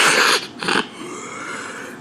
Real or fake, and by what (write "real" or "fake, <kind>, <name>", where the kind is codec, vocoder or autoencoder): real